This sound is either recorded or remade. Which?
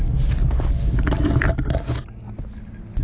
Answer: recorded